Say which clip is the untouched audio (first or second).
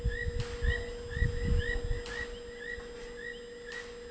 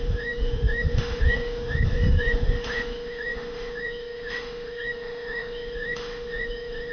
first